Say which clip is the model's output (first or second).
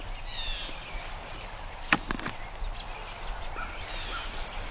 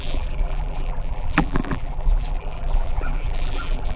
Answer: second